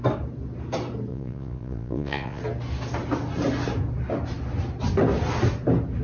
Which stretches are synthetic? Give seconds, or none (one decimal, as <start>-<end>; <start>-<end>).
1.1-2.4